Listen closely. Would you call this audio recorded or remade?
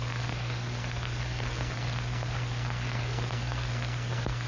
remade